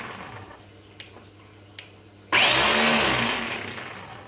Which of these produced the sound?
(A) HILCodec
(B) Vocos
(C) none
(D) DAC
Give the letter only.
C